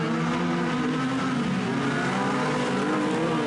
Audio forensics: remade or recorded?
recorded